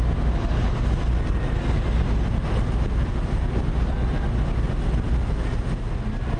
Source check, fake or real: real